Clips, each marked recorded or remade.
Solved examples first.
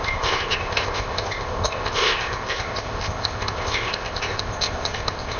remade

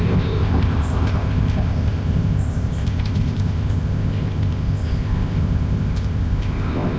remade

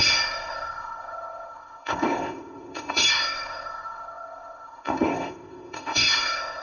remade